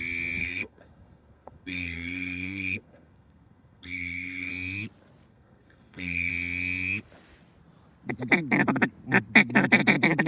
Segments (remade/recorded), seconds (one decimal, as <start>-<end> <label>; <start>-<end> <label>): 0.0-0.4 recorded; 0.4-4.5 remade; 4.5-5.3 recorded; 5.3-6.3 remade; 6.3-10.3 recorded